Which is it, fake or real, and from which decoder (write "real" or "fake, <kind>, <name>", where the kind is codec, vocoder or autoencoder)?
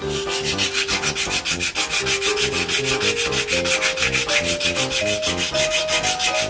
real